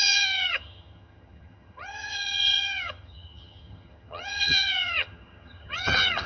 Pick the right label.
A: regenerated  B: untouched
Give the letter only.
A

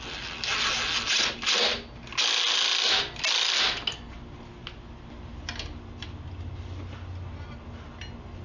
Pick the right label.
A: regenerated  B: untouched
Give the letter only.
B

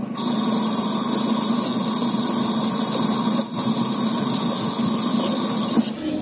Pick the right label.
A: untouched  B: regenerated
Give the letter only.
A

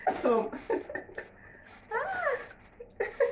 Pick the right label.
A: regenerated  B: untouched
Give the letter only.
A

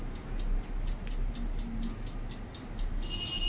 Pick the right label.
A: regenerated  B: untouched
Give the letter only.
B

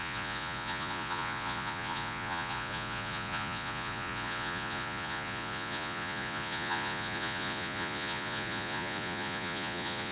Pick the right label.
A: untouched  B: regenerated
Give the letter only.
B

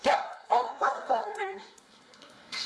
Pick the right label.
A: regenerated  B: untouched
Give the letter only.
A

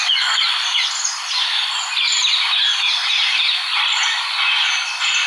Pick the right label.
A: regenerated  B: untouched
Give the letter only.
B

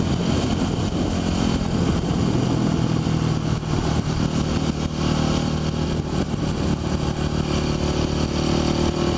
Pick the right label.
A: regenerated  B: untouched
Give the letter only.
B